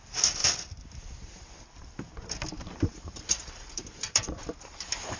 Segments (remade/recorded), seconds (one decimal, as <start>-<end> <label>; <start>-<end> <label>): 0.0-5.2 remade